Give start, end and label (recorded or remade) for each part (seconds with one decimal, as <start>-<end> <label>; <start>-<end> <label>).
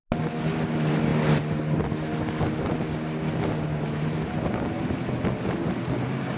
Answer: 0.0-6.4 recorded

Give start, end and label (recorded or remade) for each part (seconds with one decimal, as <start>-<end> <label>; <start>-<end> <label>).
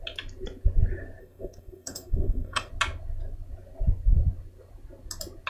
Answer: 0.0-1.2 recorded; 1.2-2.7 remade; 2.7-5.5 recorded